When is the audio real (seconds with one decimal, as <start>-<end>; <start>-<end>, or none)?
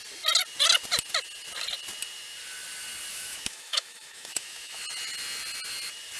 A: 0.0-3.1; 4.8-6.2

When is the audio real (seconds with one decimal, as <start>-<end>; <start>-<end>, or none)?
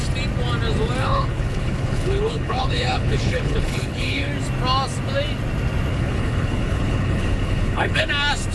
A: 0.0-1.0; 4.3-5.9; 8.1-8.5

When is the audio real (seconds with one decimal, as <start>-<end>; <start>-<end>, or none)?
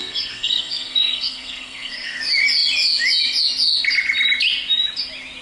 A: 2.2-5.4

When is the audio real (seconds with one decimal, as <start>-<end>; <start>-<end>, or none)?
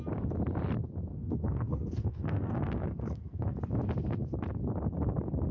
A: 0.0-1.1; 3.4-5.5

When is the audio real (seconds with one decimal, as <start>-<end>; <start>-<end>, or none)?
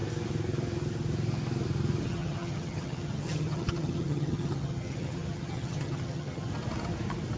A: 0.0-2.0; 6.5-7.4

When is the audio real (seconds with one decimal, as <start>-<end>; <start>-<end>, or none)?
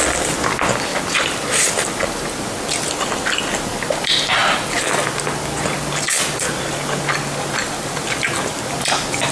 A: 0.0-9.3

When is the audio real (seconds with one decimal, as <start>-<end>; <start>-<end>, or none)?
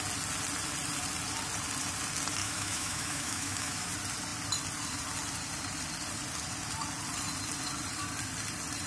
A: 0.0-2.4; 3.9-8.9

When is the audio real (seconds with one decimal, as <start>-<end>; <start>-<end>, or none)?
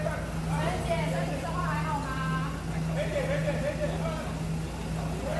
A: 0.0-5.4